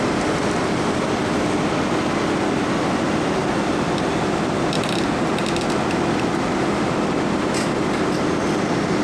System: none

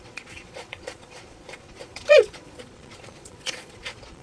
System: vocoder, Vocos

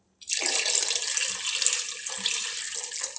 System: none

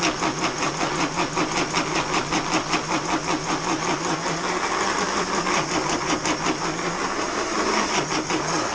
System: none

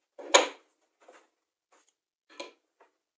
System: none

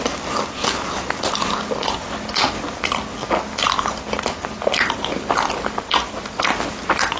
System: none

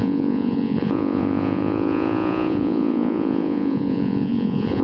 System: vocoder, Vocos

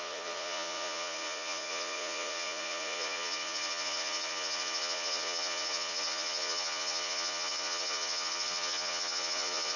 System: vocoder, Vocos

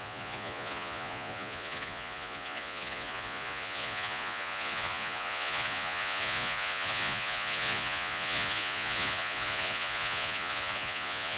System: vocoder, Vocos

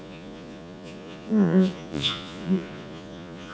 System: vocoder, Vocos